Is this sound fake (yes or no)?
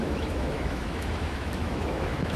yes